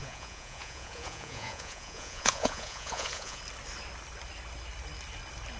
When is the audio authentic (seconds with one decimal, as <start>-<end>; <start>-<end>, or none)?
3.4-5.6